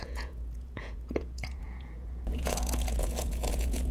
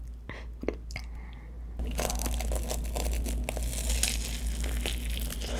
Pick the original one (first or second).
second